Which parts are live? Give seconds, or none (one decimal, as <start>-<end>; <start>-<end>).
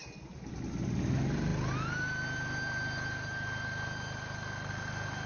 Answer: 0.0-5.3